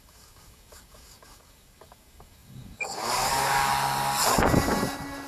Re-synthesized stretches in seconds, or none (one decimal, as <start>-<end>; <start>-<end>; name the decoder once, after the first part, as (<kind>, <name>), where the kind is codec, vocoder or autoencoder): 0.0-3.7 (codec, DAC)